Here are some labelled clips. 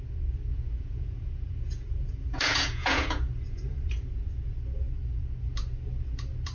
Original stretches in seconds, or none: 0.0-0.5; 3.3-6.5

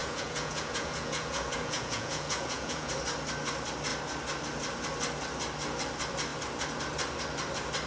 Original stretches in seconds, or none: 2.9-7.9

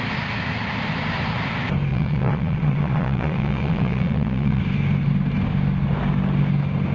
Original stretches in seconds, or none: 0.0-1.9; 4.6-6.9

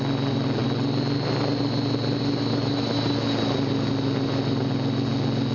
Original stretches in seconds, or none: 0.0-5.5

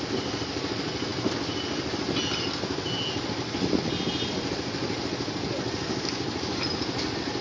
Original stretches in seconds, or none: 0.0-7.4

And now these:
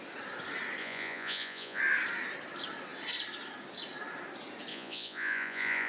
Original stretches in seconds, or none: 0.0-0.8; 1.8-4.7

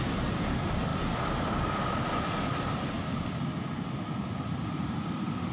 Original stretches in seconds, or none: 0.0-5.5